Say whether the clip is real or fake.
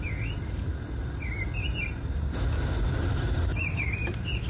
real